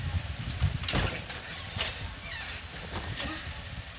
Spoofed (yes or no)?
yes